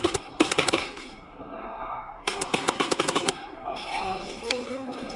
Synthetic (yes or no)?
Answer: yes